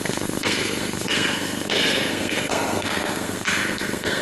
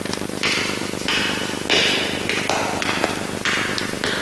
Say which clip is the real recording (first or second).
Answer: second